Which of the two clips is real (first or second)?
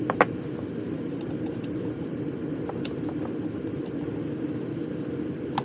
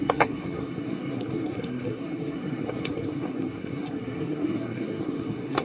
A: first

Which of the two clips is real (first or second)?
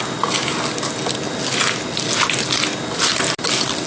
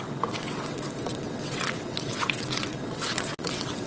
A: first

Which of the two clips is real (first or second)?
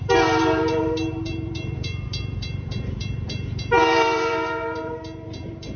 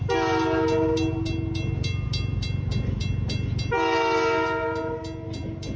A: second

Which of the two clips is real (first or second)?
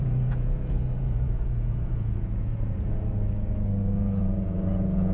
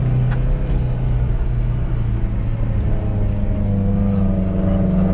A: second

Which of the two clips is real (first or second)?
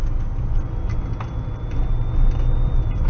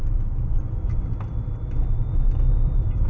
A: first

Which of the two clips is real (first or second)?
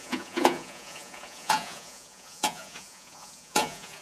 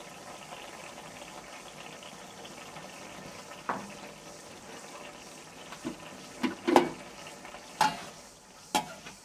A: second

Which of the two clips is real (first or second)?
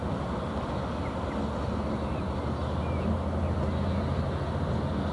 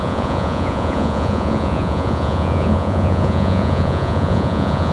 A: first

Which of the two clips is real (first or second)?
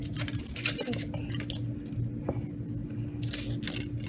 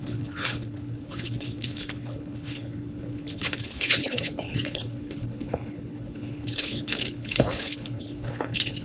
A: first